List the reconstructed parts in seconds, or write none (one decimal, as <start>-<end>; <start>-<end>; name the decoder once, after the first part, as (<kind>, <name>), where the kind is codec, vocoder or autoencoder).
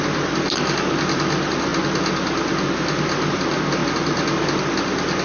none